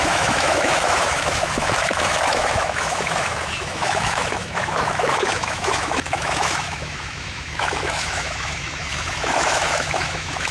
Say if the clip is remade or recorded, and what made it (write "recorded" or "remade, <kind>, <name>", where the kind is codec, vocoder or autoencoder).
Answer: remade, autoencoder, DAC-VAE